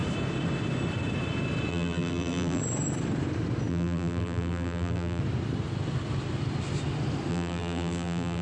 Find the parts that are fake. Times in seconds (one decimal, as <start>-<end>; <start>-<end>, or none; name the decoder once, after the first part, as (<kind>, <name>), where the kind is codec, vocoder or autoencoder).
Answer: 1.7-2.6 (vocoder, BigVGAN v2); 3.7-5.2; 7.3-8.4